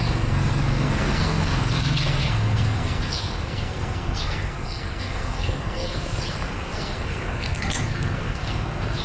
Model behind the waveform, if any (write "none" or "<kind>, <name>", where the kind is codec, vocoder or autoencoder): codec, SNAC